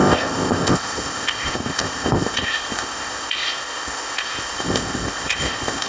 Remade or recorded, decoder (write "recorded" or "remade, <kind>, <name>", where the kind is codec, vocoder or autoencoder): remade, codec, ZipCodec